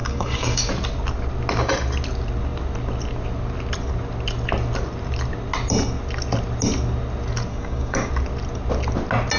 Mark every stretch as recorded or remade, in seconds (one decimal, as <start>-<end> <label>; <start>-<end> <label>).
0.0-0.7 remade; 0.7-7.5 recorded; 7.5-8.1 remade; 8.1-9.4 recorded